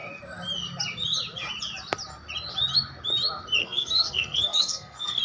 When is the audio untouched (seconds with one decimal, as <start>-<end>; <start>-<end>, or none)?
0.0-3.6